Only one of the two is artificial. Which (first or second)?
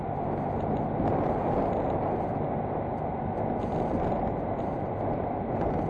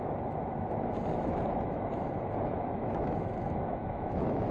second